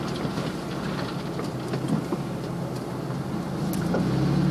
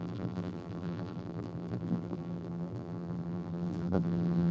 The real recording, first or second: first